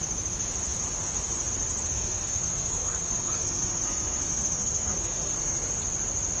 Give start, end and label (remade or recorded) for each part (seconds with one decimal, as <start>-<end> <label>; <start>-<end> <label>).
0.0-1.9 recorded; 1.9-5.7 remade; 5.7-6.4 recorded